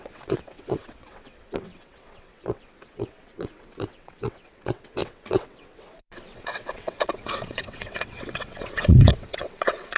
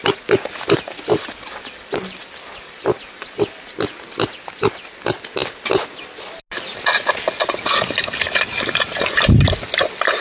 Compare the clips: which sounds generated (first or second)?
first